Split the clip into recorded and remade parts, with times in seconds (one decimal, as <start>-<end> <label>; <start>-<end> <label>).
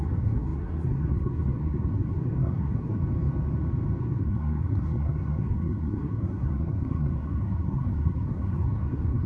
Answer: 0.0-3.0 remade; 3.0-4.0 recorded; 4.0-9.3 remade